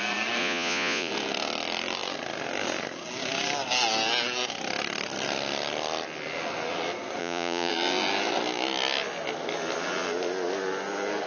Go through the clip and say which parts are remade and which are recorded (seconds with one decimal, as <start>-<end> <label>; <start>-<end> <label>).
0.0-0.4 recorded; 0.4-1.1 remade; 1.1-7.2 recorded; 7.2-7.7 remade; 7.7-11.3 recorded